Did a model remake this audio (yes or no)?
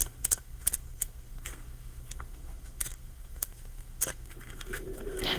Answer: yes